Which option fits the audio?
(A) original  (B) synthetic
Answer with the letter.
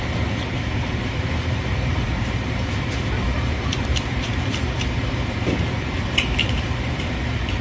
B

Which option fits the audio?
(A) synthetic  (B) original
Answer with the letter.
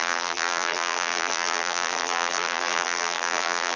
A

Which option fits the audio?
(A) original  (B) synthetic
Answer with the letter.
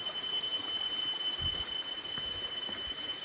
A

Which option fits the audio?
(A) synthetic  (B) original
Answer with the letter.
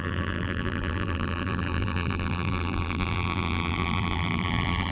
A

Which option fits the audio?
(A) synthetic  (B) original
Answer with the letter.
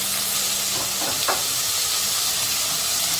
B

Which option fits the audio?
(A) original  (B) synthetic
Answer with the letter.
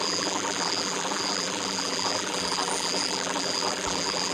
B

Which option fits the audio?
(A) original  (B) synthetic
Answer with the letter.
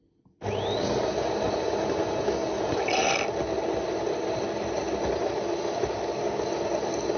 A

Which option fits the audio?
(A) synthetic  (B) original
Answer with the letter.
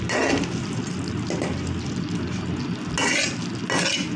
B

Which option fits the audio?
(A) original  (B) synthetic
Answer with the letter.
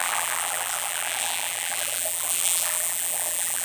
B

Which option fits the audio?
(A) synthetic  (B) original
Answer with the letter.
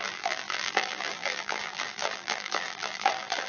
A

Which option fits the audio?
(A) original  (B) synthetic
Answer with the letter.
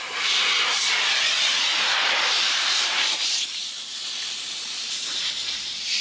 B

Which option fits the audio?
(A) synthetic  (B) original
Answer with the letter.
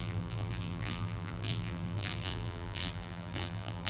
A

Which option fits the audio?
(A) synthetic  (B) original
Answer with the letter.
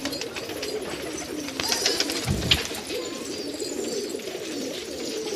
A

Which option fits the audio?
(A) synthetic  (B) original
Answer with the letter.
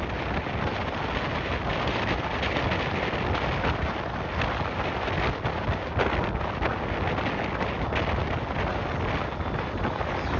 B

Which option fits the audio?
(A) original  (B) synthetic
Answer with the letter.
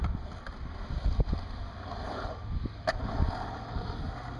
A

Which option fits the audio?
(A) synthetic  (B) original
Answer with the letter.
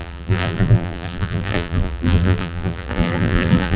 A